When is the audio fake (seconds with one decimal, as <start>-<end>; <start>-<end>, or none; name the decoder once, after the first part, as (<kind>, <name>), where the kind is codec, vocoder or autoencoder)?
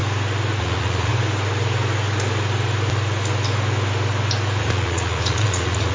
0.6-1.1 (vocoder, Vocos); 4.6-5.9